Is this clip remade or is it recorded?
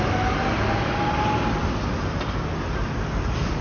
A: recorded